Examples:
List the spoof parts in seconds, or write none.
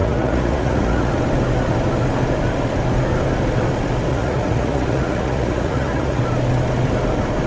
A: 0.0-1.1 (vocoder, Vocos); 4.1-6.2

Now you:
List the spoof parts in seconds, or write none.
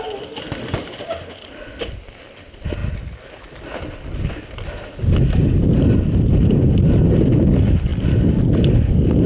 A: 7.9-8.9 (vocoder, BigVGAN v2)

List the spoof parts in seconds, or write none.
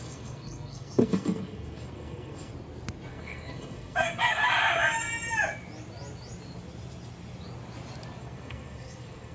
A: 0.0-2.5 (codec, SNAC); 3.1-4.4; 8.2-9.3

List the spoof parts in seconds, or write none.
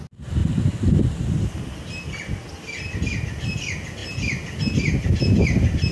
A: none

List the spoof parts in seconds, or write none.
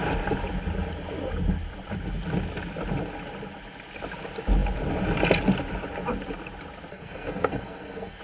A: 6.9-8.2 (codec, SNAC)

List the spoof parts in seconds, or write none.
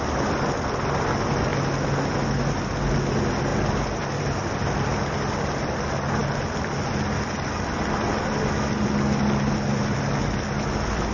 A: none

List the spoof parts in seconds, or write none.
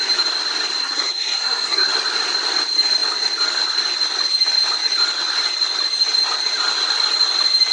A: 0.8-1.9 (codec, SNAC)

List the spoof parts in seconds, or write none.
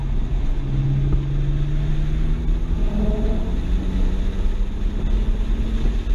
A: none